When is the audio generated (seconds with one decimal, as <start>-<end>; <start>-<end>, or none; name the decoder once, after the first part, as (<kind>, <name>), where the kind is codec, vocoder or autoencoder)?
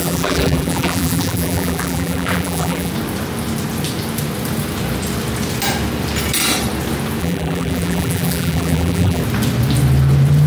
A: 0.0-2.9 (vocoder, BigVGAN v2); 7.2-9.2